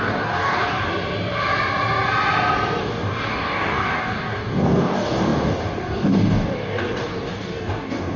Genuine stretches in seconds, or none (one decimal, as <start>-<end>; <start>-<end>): 0.9-2.8